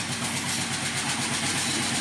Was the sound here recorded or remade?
recorded